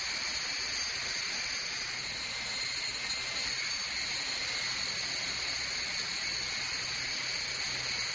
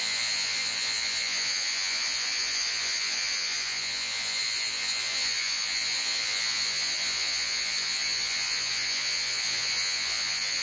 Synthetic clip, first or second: second